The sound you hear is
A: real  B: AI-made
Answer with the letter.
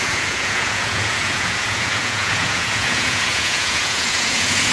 B